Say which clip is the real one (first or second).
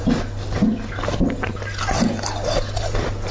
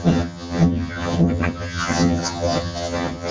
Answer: first